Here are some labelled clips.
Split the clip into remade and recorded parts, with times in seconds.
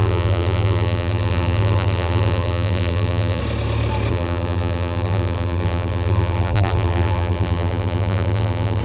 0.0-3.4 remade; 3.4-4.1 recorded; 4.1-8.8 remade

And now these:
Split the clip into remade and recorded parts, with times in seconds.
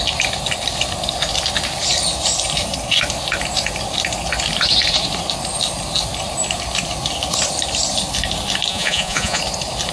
0.0-8.7 recorded; 8.7-9.4 remade; 9.4-9.9 recorded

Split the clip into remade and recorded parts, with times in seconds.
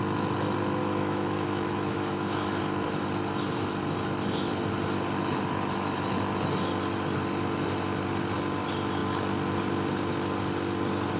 0.0-0.8 recorded; 0.8-2.6 remade; 2.6-11.2 recorded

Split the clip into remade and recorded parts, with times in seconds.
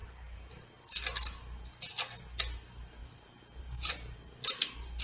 0.0-0.7 remade; 0.7-3.0 recorded; 3.0-4.6 remade; 4.6-5.0 recorded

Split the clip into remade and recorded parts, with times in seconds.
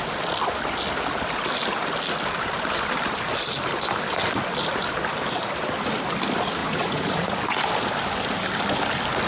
0.0-6.6 recorded; 6.6-7.4 remade; 7.4-9.3 recorded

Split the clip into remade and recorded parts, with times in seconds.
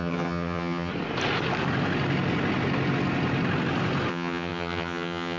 0.0-0.9 remade; 0.9-4.1 recorded; 4.1-5.4 remade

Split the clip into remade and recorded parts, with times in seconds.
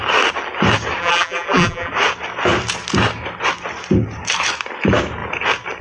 0.0-1.0 recorded; 1.0-1.9 remade; 1.9-5.8 recorded